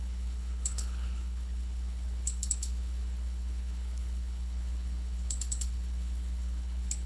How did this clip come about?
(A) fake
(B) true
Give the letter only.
A